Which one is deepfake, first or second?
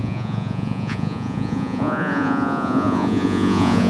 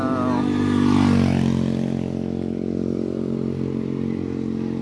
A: first